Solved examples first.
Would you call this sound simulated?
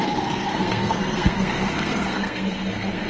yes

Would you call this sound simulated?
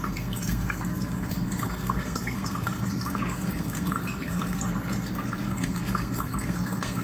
yes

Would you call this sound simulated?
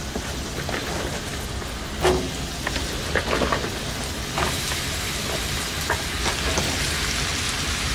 no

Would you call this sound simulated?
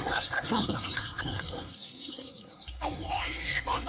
yes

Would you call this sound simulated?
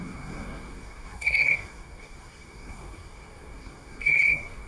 yes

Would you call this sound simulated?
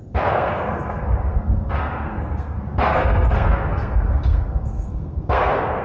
yes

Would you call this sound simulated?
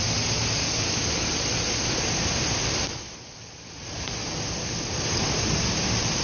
no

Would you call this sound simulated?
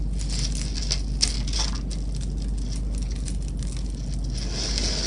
no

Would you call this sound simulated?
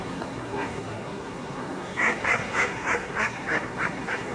yes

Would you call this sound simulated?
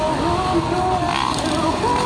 no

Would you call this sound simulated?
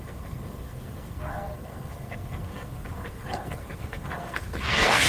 yes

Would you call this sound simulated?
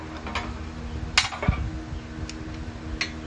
no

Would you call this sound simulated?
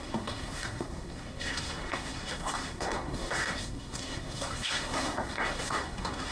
yes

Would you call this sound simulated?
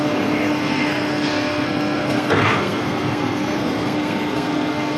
yes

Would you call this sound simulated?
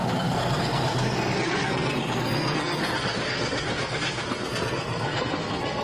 yes